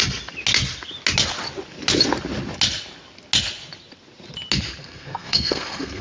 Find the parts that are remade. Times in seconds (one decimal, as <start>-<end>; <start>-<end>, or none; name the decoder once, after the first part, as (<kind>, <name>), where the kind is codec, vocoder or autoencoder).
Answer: 4.8-6.0 (codec, SNAC)